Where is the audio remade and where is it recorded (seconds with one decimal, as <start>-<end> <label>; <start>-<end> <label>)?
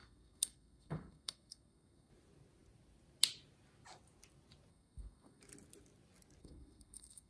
0.0-2.1 remade; 2.1-4.7 recorded; 4.7-5.4 remade; 5.4-6.4 recorded; 6.4-7.3 remade